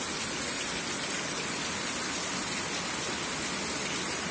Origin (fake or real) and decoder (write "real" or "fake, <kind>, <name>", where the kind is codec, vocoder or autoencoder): real